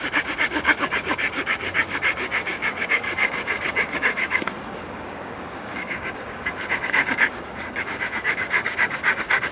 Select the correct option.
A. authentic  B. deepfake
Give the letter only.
B